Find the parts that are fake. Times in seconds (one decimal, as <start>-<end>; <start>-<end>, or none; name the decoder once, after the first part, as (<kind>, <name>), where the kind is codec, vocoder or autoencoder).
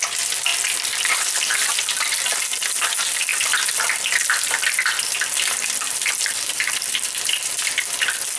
0.5-1.1 (vocoder, BigVGAN v2); 1.5-2.3; 3.3-7.5